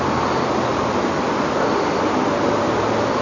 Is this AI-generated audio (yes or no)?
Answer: no